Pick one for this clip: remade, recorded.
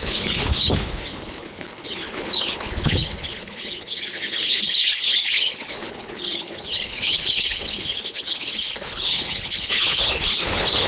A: remade